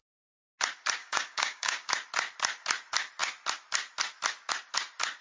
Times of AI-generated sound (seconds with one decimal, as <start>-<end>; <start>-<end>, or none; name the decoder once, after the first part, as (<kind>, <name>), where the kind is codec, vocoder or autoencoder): 1.0-1.9 (codec, DAC)